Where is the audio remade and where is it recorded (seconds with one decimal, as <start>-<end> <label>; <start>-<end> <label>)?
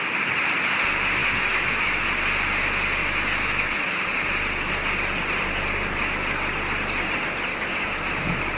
0.0-1.2 recorded; 1.2-2.1 remade; 2.1-3.0 recorded; 3.0-4.1 remade; 4.1-7.5 recorded; 7.5-8.0 remade; 8.0-8.6 recorded